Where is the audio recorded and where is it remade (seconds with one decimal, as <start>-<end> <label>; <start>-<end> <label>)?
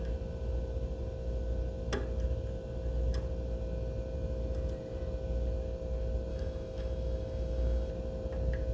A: 0.0-6.3 recorded; 6.3-7.9 remade; 7.9-8.7 recorded